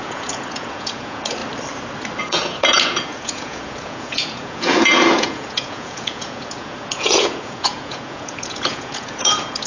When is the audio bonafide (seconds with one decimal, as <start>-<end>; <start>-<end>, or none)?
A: 1.4-2.2